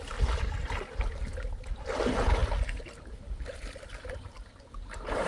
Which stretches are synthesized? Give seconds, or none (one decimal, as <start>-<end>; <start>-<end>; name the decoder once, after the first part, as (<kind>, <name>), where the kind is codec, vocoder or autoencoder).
none